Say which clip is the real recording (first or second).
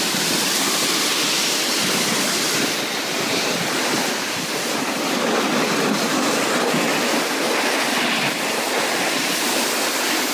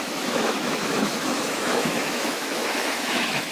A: first